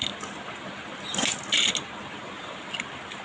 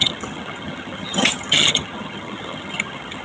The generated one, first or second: second